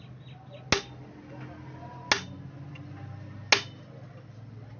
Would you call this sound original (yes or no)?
yes